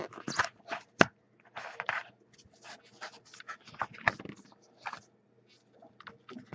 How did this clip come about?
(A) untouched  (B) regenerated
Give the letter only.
A